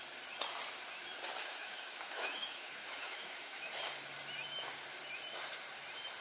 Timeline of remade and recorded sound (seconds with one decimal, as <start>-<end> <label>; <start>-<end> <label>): 0.0-1.4 recorded; 1.4-3.6 remade; 3.6-6.2 recorded